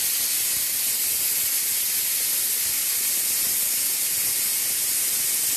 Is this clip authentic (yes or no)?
yes